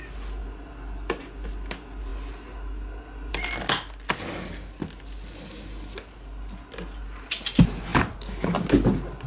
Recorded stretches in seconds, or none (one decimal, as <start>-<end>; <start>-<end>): 0.0-9.3